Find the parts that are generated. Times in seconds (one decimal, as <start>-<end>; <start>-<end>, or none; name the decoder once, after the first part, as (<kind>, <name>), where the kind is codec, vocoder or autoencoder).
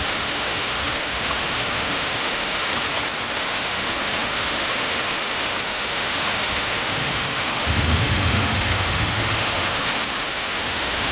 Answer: 0.0-2.7 (autoencoder, DAC-VAE); 3.3-11.1